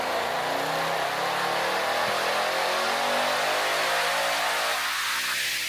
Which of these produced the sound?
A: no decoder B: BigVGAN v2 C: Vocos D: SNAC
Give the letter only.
A